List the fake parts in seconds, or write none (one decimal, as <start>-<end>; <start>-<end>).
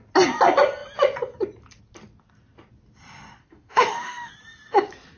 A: 3.4-4.3